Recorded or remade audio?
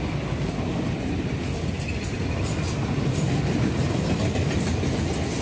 recorded